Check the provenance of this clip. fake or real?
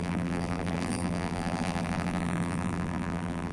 fake